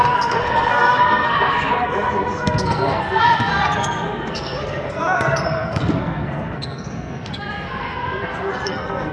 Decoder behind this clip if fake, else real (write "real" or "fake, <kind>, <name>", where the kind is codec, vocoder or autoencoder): fake, codec, SNAC